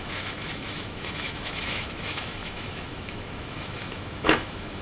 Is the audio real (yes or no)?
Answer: no